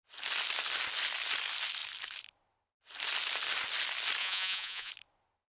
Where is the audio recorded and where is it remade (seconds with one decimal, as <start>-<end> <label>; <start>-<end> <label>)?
0.0-4.2 recorded; 4.2-4.9 remade; 4.9-5.5 recorded